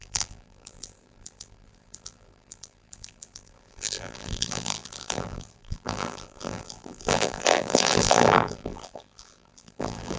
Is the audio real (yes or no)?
no